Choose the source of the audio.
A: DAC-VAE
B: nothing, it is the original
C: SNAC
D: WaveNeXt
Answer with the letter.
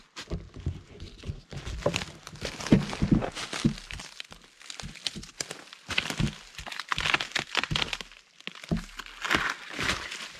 B